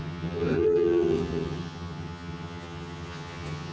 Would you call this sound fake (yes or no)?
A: yes